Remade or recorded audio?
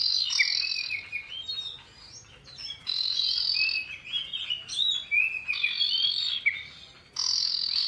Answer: recorded